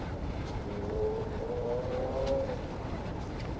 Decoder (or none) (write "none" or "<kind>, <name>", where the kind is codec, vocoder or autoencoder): vocoder, BigVGAN v2